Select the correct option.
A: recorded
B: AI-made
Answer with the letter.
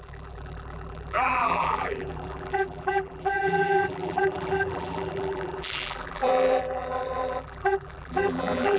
B